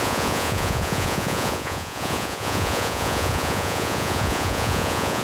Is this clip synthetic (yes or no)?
yes